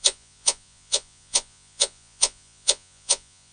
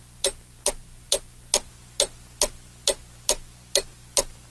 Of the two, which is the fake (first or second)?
first